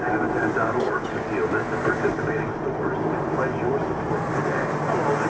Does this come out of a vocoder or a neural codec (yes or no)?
no